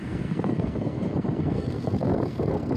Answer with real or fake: fake